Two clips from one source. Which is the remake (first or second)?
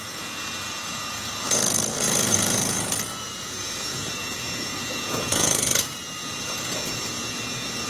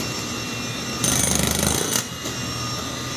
first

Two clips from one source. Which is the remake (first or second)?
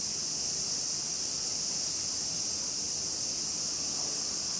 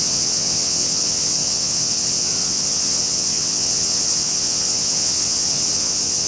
second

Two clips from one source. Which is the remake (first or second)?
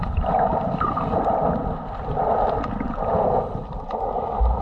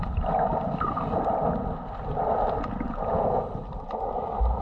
first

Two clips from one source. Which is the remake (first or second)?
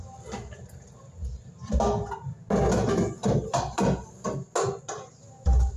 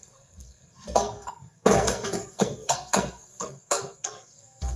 second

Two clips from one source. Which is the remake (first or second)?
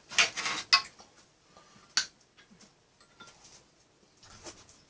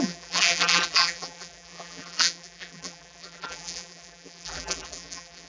second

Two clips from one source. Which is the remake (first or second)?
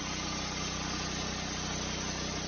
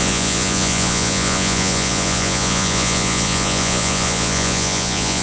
second